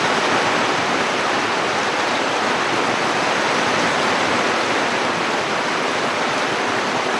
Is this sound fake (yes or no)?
no